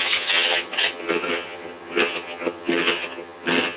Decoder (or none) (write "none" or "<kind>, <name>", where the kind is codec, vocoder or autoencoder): vocoder, HiFi-GAN